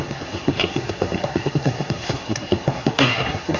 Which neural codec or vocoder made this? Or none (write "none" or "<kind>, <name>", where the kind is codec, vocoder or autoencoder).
codec, SNAC